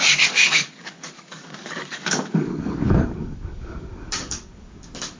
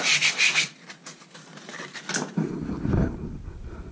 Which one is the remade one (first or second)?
first